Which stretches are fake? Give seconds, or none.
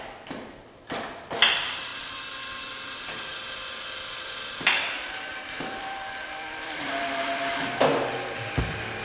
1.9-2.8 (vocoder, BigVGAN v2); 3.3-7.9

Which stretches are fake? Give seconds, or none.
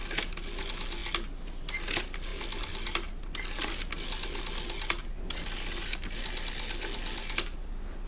none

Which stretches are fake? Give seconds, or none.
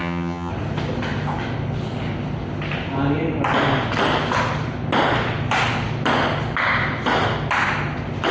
0.0-0.5 (vocoder, HiFi-GAN)